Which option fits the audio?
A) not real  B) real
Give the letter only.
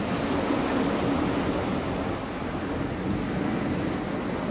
B